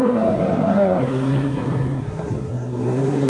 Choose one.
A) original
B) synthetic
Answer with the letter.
B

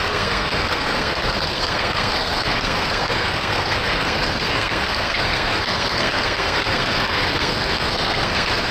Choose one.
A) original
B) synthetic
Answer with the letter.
B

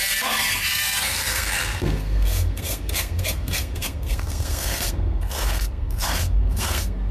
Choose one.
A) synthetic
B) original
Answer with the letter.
A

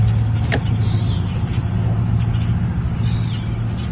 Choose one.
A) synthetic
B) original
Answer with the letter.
B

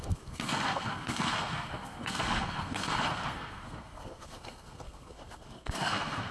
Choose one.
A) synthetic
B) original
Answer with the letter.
A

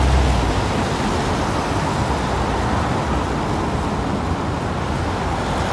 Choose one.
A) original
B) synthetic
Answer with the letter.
A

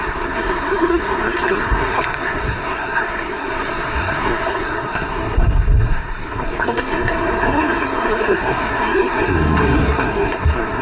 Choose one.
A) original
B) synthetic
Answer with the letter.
B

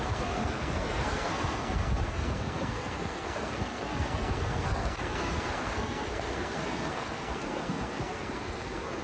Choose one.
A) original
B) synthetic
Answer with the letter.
B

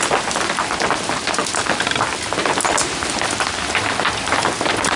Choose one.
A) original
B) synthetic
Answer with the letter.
A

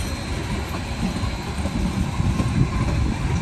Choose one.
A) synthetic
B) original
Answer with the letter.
B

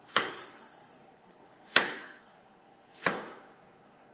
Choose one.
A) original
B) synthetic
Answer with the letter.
B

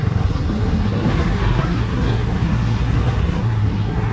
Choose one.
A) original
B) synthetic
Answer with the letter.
B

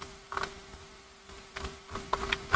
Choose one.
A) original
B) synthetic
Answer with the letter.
A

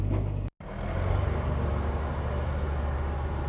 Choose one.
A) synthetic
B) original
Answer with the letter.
B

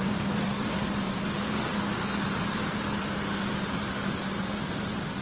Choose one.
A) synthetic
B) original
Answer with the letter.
B